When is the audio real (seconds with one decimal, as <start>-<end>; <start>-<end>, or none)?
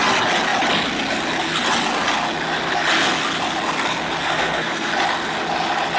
0.0-4.2; 4.9-6.0